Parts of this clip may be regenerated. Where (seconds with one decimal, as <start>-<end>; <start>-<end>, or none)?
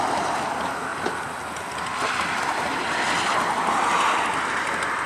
none